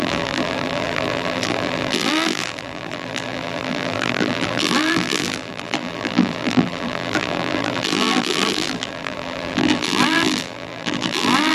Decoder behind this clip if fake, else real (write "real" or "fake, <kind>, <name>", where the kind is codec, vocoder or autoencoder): fake, vocoder, BigVGAN v2